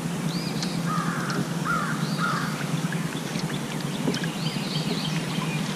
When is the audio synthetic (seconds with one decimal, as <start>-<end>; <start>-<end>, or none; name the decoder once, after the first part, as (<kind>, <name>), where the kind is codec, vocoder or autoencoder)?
1.4-3.4 (codec, DAC)